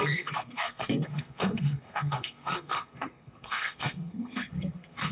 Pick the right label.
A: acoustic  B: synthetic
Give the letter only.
B